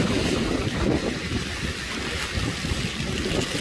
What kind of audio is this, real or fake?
real